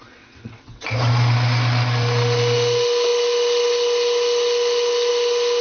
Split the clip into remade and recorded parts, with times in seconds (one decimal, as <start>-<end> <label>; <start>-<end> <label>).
0.0-0.9 remade; 0.9-5.6 recorded